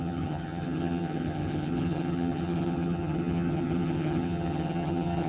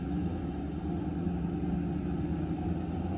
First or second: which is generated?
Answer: first